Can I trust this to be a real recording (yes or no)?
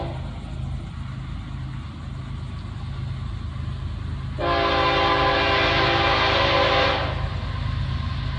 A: yes